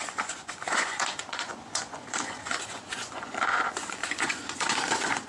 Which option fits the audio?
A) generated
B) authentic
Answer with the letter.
A